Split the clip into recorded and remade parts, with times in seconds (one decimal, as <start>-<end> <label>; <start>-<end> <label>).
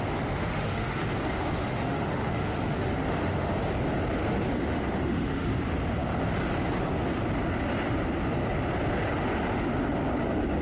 0.0-1.0 remade; 1.0-1.6 recorded; 1.6-3.5 remade; 3.5-4.5 recorded; 4.5-5.5 remade; 5.5-10.6 recorded